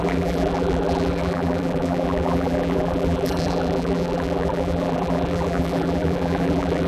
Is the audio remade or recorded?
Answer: remade